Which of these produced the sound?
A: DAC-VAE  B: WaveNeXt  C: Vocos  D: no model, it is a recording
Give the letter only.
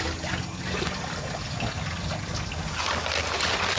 D